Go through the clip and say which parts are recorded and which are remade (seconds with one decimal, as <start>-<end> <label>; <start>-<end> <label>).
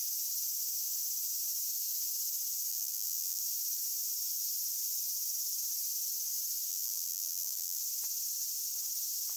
0.0-2.7 recorded; 2.7-3.4 remade; 3.4-6.7 recorded; 6.7-7.8 remade; 7.8-9.4 recorded